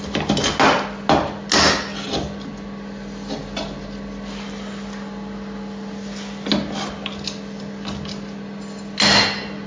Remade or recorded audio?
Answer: recorded